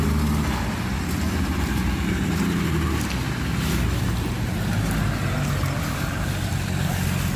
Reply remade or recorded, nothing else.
recorded